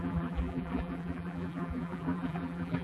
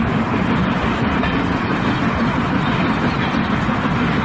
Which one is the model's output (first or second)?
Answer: first